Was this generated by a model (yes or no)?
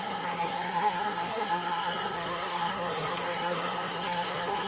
yes